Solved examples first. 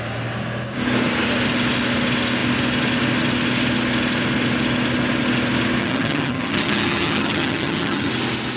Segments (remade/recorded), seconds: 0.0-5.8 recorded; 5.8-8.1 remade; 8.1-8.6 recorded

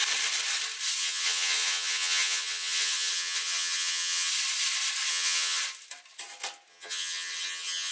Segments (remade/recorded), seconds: 0.0-1.0 recorded; 1.0-4.3 remade; 4.3-5.1 recorded; 5.1-5.6 remade; 5.6-6.7 recorded; 6.7-7.9 remade

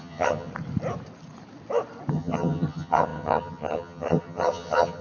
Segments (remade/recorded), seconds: 0.0-0.5 remade; 0.5-2.1 recorded; 2.1-5.0 remade

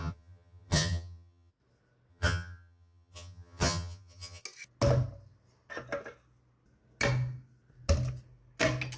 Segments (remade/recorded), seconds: 0.0-1.5 remade; 1.5-2.1 recorded; 2.1-4.4 remade; 4.4-9.0 recorded

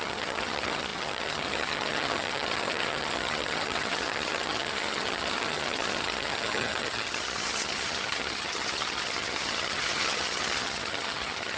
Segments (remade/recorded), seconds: 0.0-11.6 remade

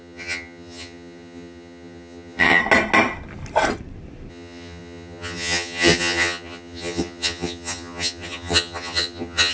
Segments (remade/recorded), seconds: 0.0-2.6 remade; 2.6-4.3 recorded; 4.3-9.5 remade

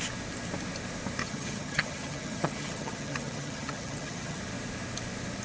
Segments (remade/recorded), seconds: 0.0-1.2 recorded; 1.2-4.4 remade; 4.4-5.4 recorded